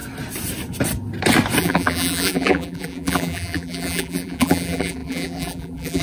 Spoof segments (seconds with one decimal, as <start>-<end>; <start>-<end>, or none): 1.6-6.0